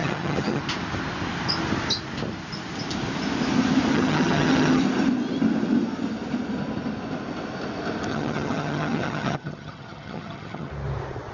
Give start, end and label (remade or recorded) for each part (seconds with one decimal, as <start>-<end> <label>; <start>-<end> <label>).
0.0-0.6 remade; 0.6-3.9 recorded; 3.9-4.8 remade; 4.8-8.1 recorded; 8.1-10.7 remade; 10.7-11.3 recorded